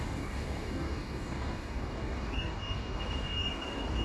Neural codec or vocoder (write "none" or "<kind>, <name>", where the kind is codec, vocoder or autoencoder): codec, DAC